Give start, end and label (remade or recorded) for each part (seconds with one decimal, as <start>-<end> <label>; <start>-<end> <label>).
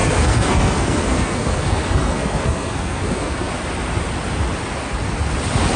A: 0.0-3.5 remade; 3.5-5.8 recorded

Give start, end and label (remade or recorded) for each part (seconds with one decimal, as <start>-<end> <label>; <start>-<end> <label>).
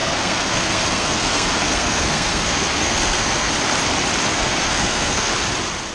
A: 0.0-3.5 remade; 3.5-4.3 recorded; 4.3-5.3 remade; 5.3-5.9 recorded